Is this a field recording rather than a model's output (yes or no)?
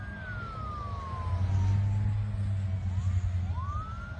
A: yes